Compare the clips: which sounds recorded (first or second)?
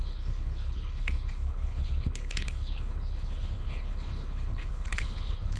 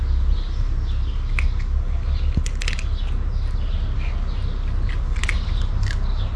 second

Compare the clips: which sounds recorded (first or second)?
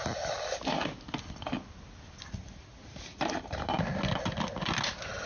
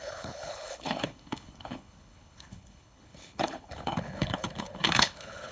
first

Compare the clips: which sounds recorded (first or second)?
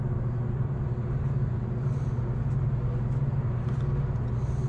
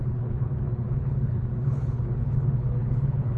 first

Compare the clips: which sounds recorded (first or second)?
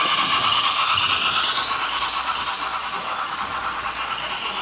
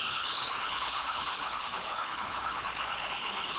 first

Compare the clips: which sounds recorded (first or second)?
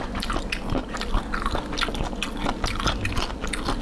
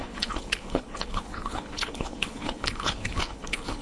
first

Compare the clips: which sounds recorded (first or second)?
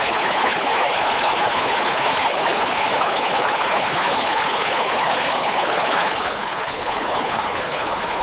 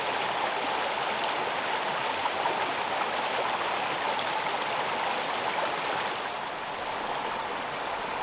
second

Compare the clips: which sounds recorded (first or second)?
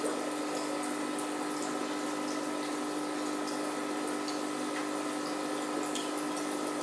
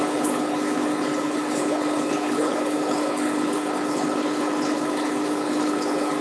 first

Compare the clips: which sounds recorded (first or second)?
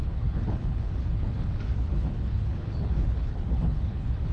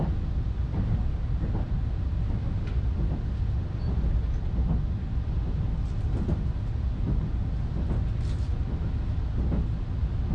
second